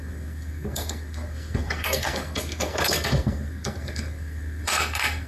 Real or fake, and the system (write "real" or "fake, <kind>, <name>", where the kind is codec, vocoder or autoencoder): fake, codec, SNAC